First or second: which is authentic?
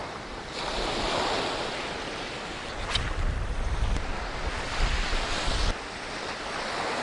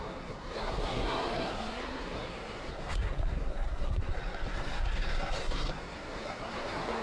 first